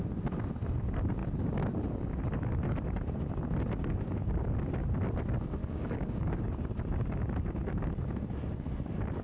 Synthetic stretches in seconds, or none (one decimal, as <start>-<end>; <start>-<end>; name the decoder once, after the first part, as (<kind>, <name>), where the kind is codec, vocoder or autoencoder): 5.6-6.5 (codec, DAC)